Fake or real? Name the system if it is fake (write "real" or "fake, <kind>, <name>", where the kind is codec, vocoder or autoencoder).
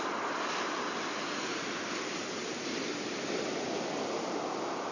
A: real